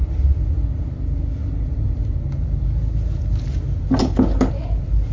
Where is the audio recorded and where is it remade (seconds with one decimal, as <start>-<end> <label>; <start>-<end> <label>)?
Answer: 0.0-5.1 recorded